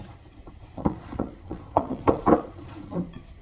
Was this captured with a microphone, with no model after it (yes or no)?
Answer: no